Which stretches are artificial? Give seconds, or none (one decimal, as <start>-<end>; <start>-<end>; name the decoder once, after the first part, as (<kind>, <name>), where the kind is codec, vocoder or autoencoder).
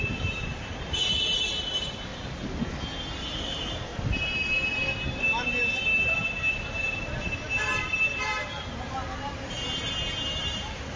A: 0.0-2.1 (vocoder, BigVGAN v2); 3.4-3.9; 6.4-11.0